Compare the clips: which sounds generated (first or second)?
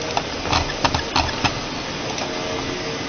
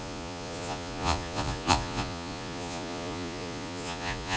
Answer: second